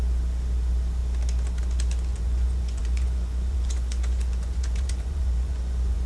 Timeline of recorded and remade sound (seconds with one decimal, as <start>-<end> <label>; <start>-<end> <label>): 0.0-2.1 recorded; 2.1-6.1 remade